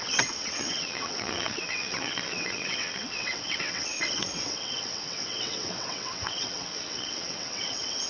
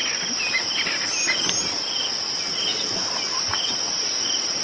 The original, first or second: second